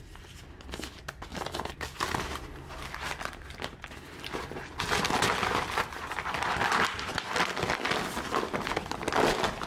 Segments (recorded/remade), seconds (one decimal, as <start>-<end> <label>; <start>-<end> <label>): 0.0-1.3 recorded; 1.3-3.8 remade; 3.8-7.1 recorded; 7.1-8.7 remade; 8.7-9.7 recorded